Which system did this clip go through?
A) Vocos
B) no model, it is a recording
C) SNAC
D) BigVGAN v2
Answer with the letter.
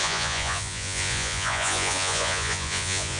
A